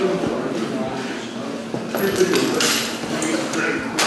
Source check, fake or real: real